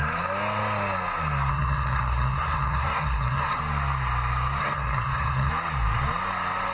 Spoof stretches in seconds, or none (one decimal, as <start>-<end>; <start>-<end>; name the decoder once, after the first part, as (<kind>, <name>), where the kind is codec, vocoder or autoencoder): 1.5-3.6 (codec, SNAC); 4.6-5.5

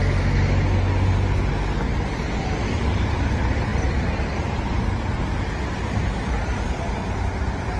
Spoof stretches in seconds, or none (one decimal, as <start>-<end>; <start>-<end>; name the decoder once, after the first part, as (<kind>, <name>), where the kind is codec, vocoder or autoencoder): 1.9-3.3 (vocoder, BigVGAN v2)

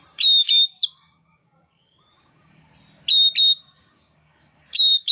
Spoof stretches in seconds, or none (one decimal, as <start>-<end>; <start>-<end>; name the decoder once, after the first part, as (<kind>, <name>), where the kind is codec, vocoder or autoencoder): 0.0-2.6 (codec, DAC); 3.4-5.1

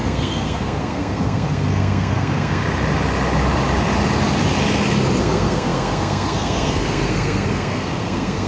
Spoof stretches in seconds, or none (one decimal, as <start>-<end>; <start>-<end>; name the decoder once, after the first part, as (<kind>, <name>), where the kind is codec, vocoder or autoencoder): 0.0-2.6 (codec, SNAC); 5.2-8.5

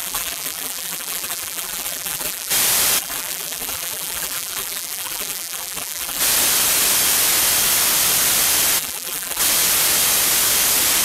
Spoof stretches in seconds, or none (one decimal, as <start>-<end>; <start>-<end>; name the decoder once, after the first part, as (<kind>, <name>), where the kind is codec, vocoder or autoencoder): 0.0-2.5 (vocoder, BigVGAN v2); 3.0-6.2; 8.8-9.4

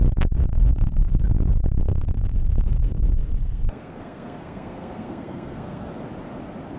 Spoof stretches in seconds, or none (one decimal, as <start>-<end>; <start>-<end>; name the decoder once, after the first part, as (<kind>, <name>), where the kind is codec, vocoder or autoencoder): 0.4-1.2 (codec, SNAC); 1.8-5.9

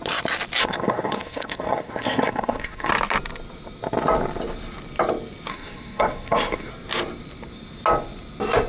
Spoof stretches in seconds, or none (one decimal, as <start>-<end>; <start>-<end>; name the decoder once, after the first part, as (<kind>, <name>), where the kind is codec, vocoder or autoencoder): 0.6-2.9 (codec, SNAC); 5.5-6.7